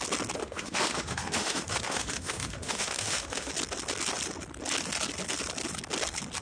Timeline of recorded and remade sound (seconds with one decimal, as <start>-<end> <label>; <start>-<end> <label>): 0.0-0.4 recorded; 0.4-3.5 remade; 3.5-6.4 recorded

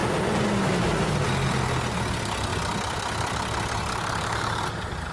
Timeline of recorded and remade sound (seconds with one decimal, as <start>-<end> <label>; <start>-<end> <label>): 0.0-3.9 recorded; 3.9-4.6 remade; 4.6-5.1 recorded

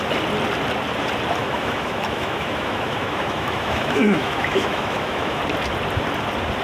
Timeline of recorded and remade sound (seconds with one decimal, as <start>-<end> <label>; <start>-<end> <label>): 0.0-1.4 recorded; 1.4-5.4 remade; 5.4-6.6 recorded

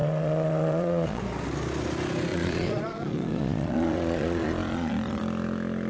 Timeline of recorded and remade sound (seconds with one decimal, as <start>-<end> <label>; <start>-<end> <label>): 0.0-1.2 remade; 1.2-2.3 recorded; 2.3-5.2 remade; 5.2-5.9 recorded

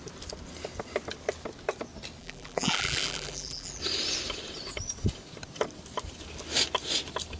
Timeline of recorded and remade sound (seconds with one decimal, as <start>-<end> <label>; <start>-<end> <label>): 0.0-2.2 recorded; 2.2-3.8 remade; 3.8-7.4 recorded